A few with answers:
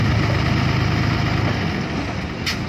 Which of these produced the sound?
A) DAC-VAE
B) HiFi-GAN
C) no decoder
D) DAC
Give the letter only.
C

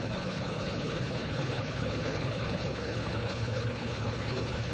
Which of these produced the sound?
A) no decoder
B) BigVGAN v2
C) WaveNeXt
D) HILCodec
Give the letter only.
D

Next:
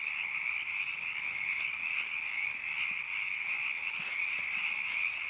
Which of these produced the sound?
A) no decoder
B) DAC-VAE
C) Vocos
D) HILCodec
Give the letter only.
A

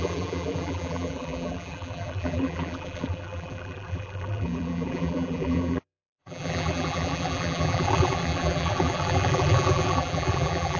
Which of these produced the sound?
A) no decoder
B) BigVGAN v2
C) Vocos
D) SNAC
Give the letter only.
B